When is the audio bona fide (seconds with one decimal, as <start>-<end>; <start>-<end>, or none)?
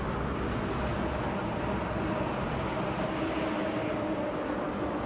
0.0-5.1